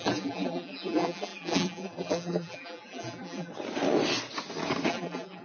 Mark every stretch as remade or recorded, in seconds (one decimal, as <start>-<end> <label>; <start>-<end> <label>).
0.0-3.5 remade; 3.5-4.9 recorded; 4.9-5.4 remade